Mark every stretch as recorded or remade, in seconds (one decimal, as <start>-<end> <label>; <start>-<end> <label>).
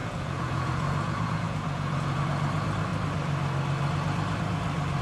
0.0-2.2 remade; 2.2-5.0 recorded